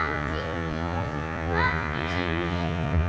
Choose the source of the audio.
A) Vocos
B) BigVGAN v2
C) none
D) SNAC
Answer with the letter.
A